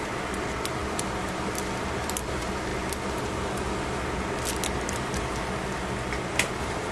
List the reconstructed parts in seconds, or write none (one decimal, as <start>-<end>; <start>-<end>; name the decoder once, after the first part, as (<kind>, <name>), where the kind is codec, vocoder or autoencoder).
none